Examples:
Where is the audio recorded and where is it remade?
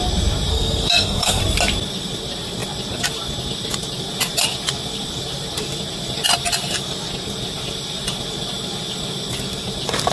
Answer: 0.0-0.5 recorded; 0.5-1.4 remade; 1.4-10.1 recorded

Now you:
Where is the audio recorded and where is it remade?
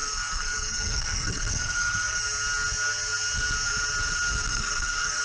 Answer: 0.0-2.2 remade; 2.2-4.5 recorded; 4.5-5.2 remade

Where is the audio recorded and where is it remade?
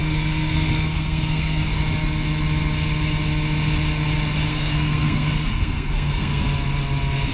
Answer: 0.0-1.8 remade; 1.8-4.5 recorded; 4.5-6.4 remade; 6.4-7.3 recorded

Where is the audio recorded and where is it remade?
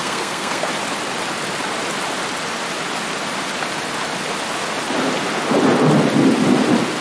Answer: 0.0-0.7 remade; 0.7-7.0 recorded